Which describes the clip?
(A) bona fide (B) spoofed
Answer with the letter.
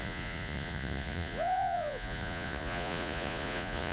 B